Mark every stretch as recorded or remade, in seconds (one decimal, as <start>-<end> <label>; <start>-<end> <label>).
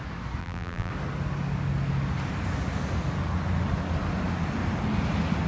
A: 0.0-0.4 recorded; 0.4-0.9 remade; 0.9-5.5 recorded